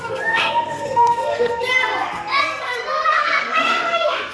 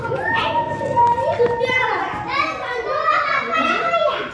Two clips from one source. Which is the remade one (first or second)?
first